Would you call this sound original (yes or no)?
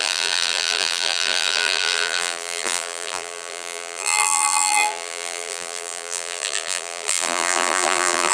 no